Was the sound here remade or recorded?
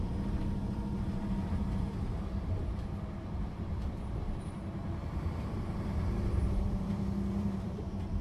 remade